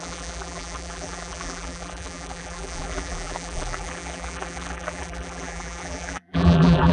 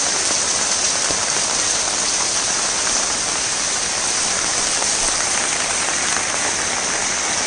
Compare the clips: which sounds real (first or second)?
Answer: second